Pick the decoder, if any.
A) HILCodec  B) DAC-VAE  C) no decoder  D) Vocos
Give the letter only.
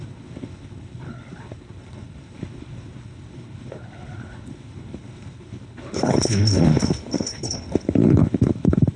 A